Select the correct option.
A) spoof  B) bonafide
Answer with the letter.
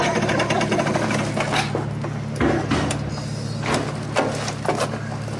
B